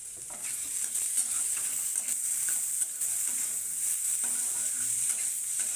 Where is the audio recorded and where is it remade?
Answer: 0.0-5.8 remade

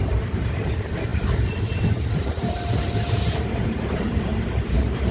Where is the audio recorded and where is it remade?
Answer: 0.0-5.1 remade